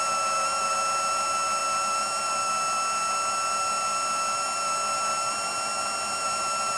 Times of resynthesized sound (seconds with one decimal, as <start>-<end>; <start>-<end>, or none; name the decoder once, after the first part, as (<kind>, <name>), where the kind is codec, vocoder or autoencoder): none